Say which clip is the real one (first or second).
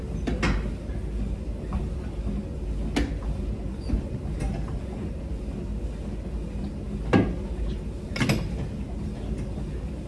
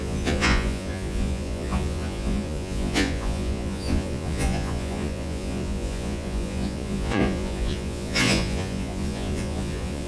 first